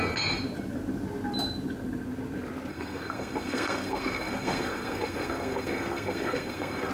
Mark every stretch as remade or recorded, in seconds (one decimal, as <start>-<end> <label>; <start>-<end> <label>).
0.0-2.7 recorded; 2.7-6.9 remade